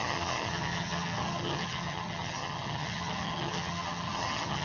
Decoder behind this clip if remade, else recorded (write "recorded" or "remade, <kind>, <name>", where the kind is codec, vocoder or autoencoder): remade, vocoder, HiFi-GAN